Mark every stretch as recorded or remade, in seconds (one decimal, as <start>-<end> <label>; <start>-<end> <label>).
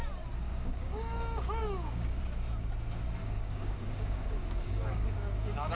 0.0-0.5 recorded; 0.5-2.2 remade; 2.2-3.2 recorded; 3.2-5.7 remade